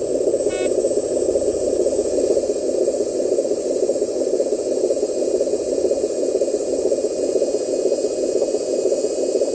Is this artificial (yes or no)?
no